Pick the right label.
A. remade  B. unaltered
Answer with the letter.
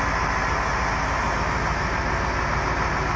B